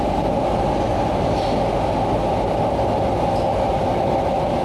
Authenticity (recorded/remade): recorded